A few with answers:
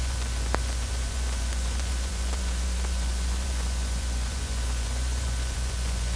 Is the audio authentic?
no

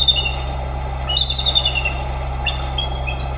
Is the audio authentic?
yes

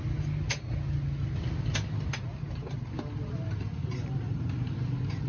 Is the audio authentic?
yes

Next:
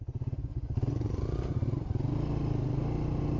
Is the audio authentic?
yes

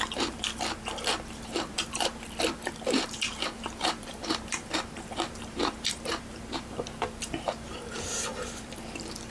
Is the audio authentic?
no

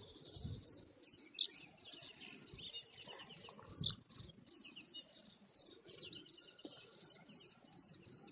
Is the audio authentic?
yes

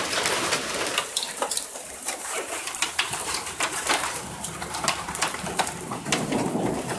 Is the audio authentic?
no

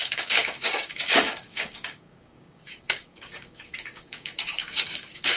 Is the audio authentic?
no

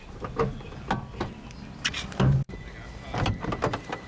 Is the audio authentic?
yes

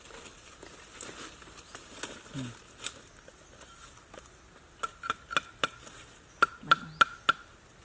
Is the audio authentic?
yes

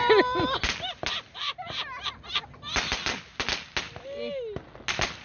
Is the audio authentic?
yes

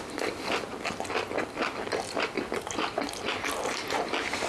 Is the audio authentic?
yes